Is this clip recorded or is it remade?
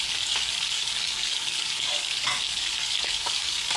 remade